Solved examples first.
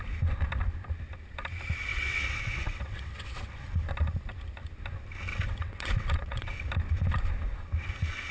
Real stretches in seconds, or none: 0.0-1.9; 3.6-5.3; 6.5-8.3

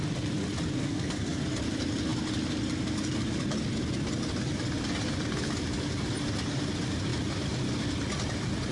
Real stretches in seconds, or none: 0.0-0.8; 1.4-8.7

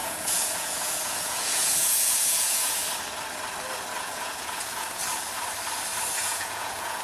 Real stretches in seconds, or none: 2.8-4.0; 5.0-6.1

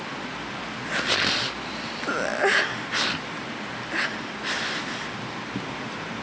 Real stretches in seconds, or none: 0.0-6.2

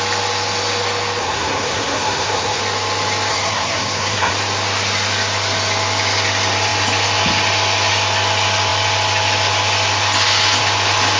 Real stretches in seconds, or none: 0.0-1.2; 2.6-3.3; 4.3-11.2

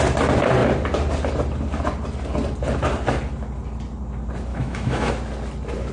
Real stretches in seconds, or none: 0.0-4.5; 5.1-5.9